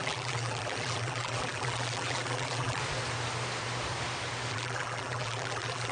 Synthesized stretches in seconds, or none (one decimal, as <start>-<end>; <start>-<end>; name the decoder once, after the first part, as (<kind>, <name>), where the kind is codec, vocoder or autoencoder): 0.0-2.8 (vocoder, BigVGAN v2); 4.5-5.9